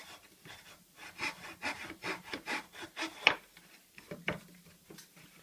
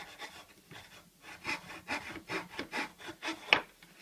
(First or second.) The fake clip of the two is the first